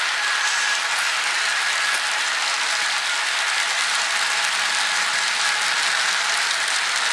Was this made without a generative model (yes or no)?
yes